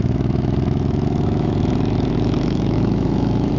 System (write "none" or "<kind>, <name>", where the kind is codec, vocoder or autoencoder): autoencoder, DAC-VAE